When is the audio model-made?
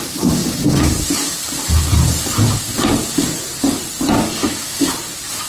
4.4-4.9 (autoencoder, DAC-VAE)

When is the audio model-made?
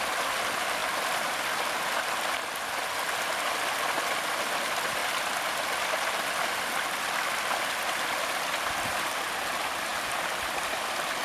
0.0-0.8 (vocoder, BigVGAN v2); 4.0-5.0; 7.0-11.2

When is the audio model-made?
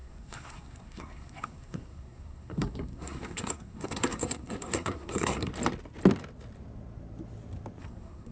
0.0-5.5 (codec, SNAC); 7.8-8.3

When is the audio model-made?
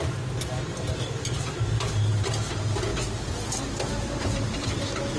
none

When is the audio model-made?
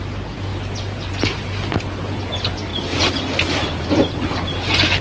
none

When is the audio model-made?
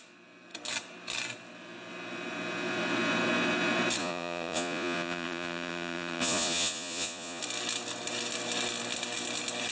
4.0-7.4 (vocoder, Vocos)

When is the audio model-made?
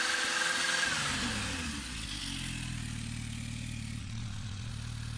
4.0-4.7 (vocoder, Vocos)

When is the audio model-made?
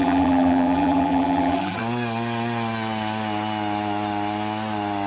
0.0-1.8 (vocoder, BigVGAN v2)